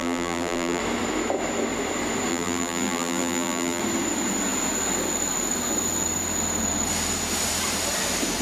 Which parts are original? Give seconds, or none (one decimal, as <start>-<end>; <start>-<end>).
0.8-2.3; 3.8-8.4